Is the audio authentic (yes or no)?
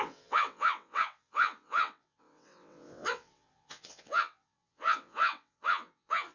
no